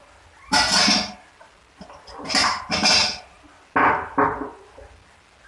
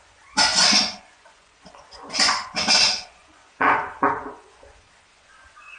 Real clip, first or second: first